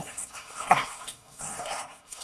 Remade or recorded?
remade